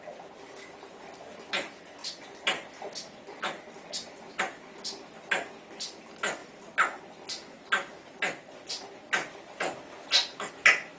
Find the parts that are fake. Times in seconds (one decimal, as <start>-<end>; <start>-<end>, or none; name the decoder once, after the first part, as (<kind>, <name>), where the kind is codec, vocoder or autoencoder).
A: none